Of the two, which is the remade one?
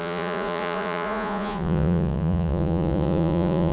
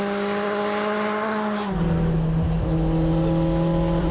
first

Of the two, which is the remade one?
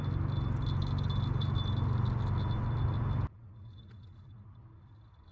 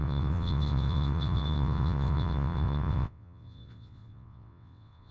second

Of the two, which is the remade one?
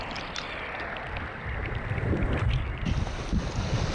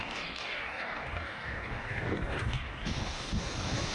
second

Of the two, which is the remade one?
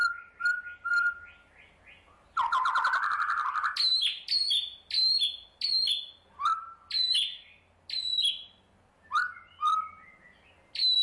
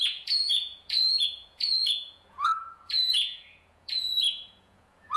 second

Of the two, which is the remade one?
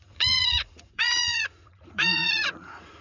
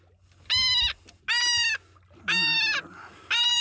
first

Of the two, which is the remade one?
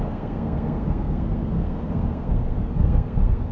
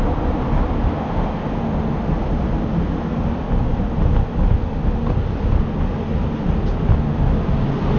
first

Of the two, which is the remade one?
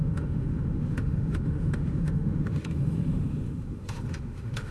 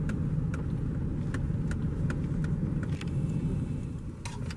first